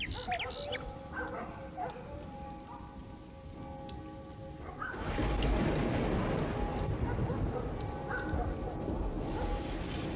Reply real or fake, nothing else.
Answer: real